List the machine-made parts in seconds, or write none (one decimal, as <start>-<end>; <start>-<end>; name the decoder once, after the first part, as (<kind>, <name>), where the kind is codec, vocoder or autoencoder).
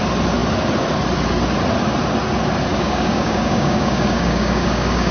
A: 2.7-5.1 (codec, DAC)